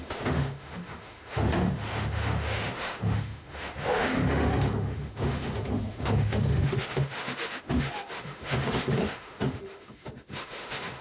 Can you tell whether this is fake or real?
fake